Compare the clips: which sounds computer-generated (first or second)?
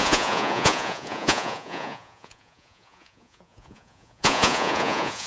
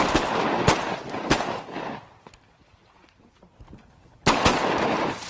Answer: first